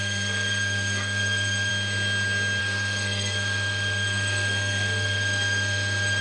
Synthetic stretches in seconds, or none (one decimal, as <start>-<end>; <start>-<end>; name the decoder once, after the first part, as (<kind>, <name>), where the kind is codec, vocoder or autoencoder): 0.0-1.7 (codec, SNAC); 2.6-6.2